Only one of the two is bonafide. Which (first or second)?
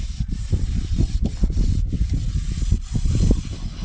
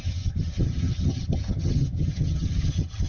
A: first